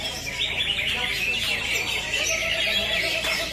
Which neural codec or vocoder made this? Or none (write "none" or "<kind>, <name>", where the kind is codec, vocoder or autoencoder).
vocoder, BigVGAN v2